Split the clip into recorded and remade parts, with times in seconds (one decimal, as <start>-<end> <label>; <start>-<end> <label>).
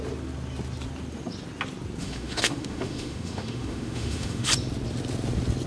0.0-2.0 recorded; 2.0-4.5 remade; 4.5-5.7 recorded